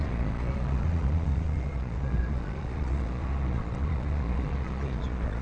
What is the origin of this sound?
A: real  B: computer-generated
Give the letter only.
B